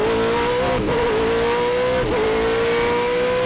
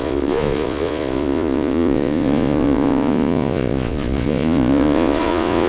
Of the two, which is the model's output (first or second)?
second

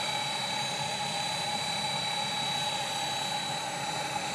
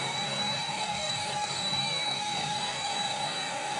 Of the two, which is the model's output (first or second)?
second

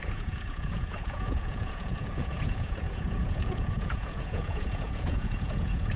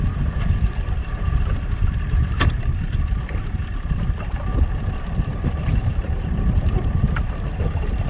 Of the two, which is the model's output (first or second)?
first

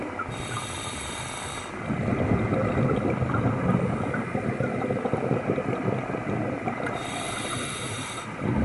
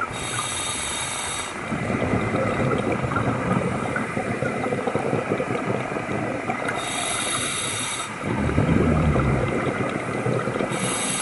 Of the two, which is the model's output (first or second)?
second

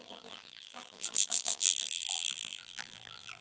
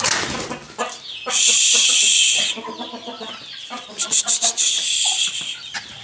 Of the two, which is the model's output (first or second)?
first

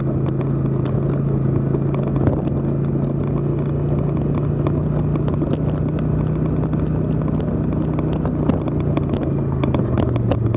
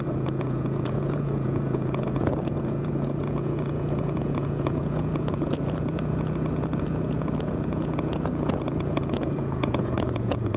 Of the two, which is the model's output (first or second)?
second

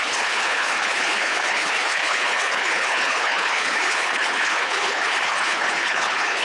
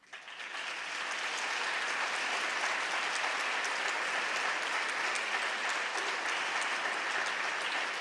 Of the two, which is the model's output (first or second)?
first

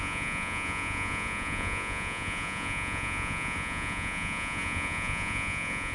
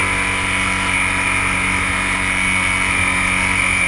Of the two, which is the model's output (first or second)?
first